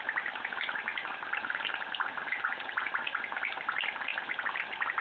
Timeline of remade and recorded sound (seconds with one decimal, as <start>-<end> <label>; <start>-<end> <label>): 0.0-5.0 recorded